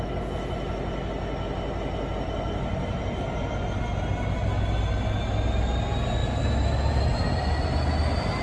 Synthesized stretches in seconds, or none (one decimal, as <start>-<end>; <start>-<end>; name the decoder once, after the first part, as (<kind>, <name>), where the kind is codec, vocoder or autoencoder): none